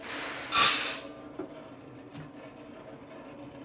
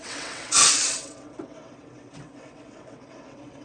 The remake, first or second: second